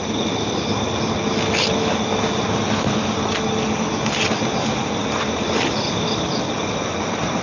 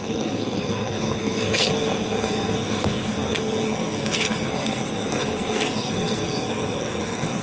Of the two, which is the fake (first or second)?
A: second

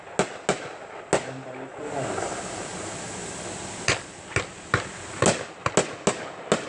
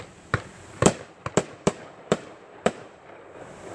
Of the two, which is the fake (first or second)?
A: second